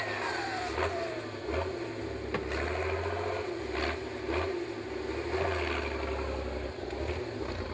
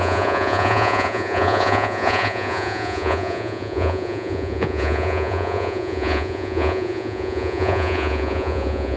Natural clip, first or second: first